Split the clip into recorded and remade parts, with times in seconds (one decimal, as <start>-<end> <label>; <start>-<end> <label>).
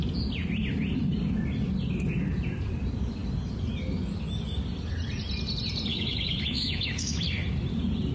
0.0-5.9 recorded; 5.9-7.2 remade; 7.2-8.1 recorded